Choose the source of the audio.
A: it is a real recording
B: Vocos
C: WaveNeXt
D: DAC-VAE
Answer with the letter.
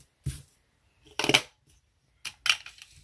A